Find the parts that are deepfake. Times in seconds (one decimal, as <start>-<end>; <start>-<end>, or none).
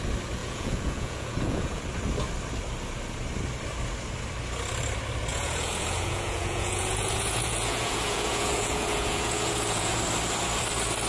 0.4-1.8; 5.3-10.0